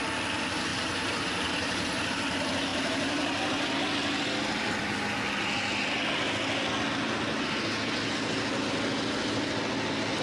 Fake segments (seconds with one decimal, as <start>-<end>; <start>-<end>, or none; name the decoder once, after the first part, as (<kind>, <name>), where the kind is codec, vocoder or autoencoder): 0.7-2.1 (vocoder, BigVGAN v2); 2.7-3.7